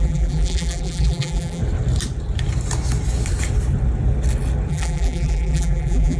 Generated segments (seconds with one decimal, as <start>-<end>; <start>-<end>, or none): 0.0-1.6; 4.7-6.2